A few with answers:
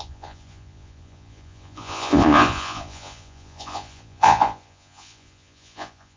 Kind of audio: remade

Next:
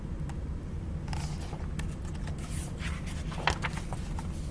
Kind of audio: recorded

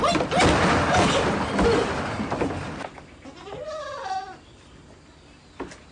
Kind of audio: recorded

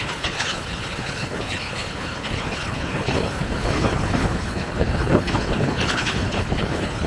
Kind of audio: remade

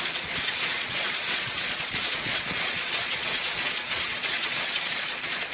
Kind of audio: remade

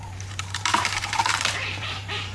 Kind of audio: remade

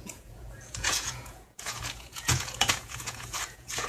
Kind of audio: remade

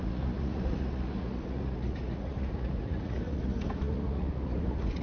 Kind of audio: remade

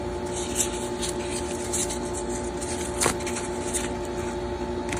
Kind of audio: recorded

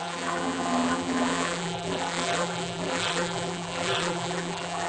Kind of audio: remade